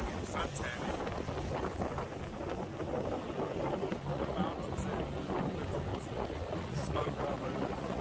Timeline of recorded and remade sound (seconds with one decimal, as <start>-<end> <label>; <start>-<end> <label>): 0.0-4.1 recorded; 4.1-4.7 remade; 4.7-5.9 recorded; 5.9-8.0 remade